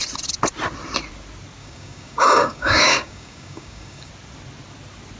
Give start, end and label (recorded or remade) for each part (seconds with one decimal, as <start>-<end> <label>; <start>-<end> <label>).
0.0-1.6 recorded; 1.6-4.1 remade; 4.1-5.2 recorded